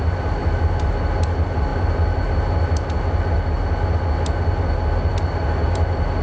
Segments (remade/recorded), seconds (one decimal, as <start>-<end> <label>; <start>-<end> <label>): 0.0-6.2 recorded